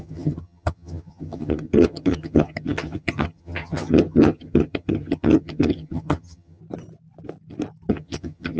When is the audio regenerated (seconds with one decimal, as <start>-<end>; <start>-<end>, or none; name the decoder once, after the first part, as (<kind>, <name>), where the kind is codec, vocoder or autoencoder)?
0.0-6.6 (vocoder, HiFi-GAN); 7.9-8.6